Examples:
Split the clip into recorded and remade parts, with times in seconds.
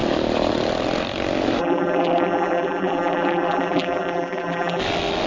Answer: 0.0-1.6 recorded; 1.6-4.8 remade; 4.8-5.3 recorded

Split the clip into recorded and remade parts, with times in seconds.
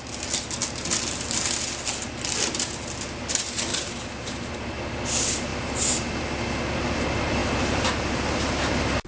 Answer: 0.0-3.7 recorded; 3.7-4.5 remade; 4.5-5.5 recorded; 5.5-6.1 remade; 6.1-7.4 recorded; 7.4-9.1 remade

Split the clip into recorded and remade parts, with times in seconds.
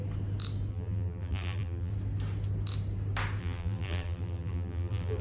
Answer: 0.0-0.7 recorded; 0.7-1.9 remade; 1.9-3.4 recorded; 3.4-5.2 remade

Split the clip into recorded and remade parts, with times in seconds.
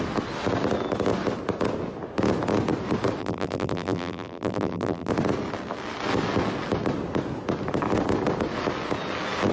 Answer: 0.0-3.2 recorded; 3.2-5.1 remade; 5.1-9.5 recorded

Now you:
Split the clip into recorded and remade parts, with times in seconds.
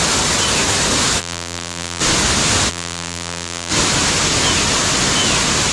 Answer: 0.0-1.2 recorded; 1.2-2.0 remade; 2.0-2.7 recorded; 2.7-3.7 remade; 3.7-5.7 recorded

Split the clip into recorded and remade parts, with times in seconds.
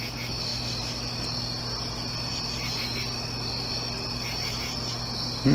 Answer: 0.0-5.5 recorded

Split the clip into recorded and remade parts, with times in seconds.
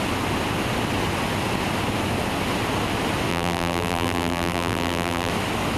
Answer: 0.0-3.3 recorded; 3.3-5.3 remade; 5.3-5.8 recorded